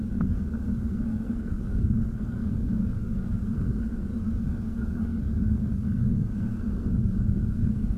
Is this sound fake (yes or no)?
yes